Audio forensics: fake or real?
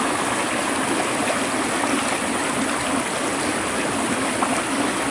real